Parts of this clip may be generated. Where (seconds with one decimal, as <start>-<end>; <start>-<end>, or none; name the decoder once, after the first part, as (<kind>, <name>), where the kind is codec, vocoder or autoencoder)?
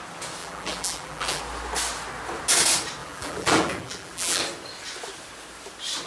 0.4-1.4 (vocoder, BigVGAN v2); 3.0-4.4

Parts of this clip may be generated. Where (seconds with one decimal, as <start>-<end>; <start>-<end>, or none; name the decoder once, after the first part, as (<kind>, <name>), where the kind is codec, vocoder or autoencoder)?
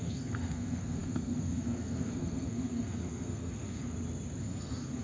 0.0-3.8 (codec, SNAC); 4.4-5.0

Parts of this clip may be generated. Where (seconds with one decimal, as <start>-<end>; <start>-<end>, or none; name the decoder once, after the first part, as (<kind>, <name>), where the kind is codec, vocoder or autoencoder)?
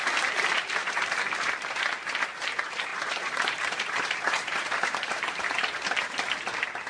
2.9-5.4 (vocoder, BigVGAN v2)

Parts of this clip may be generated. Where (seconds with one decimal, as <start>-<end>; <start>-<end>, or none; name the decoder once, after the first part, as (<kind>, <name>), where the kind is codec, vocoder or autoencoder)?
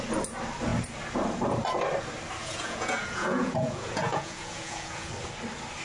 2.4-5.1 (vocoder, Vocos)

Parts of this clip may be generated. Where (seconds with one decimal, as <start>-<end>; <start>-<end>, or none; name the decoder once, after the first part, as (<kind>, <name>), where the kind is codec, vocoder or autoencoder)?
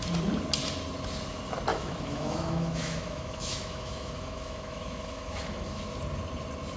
1.7-5.8 (autoencoder, DAC-VAE)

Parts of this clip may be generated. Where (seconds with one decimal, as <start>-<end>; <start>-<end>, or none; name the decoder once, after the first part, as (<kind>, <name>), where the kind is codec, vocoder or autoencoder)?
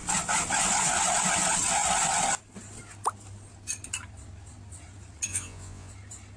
5.3-5.9 (vocoder, Vocos)